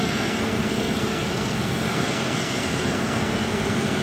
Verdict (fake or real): fake